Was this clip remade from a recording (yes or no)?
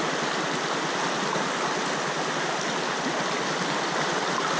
no